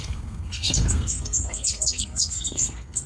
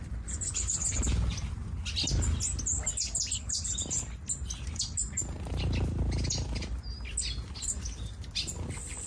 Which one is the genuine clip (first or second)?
second